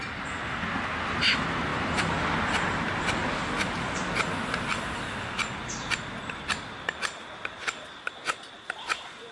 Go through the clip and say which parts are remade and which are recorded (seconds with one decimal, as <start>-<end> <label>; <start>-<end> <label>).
0.0-9.3 recorded